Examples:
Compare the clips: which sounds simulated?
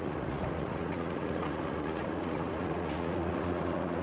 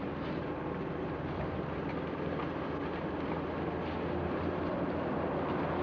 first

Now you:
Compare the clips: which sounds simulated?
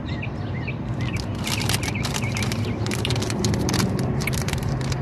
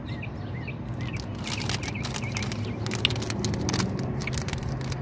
first